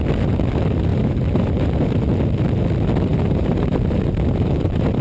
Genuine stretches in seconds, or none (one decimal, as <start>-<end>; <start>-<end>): 0.0-0.9; 2.0-3.1